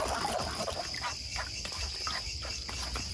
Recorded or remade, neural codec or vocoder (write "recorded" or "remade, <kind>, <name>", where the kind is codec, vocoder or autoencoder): recorded